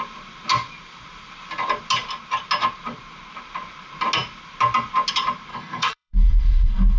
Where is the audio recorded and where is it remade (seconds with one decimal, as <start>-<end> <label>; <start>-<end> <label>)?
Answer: 0.0-5.5 recorded; 5.5-7.0 remade